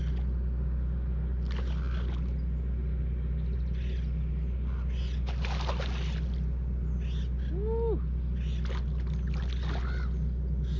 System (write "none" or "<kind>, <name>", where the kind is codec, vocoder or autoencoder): none